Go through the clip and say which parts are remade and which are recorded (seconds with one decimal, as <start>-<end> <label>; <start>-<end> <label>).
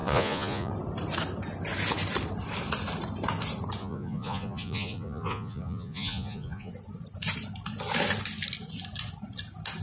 0.0-0.7 remade; 0.7-3.8 recorded; 3.8-6.7 remade; 6.7-9.8 recorded